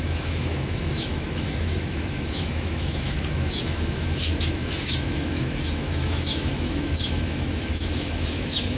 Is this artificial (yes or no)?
yes